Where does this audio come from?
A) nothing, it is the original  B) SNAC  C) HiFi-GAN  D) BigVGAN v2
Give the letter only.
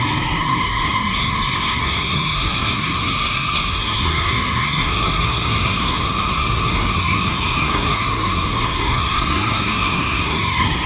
B